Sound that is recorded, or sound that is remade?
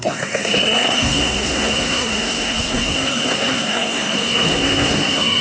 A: remade